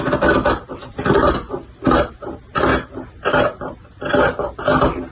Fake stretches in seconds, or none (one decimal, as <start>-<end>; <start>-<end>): none